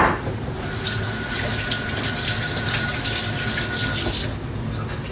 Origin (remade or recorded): recorded